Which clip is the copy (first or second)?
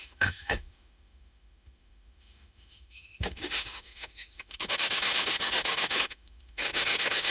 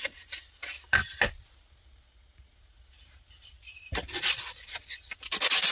first